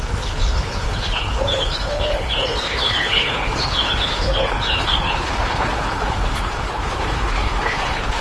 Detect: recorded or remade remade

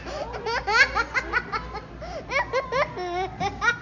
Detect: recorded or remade recorded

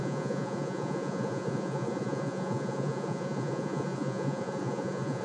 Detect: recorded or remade remade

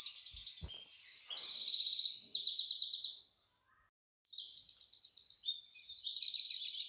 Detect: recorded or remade recorded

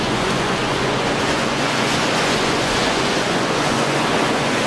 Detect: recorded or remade remade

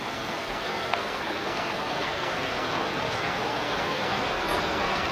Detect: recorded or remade remade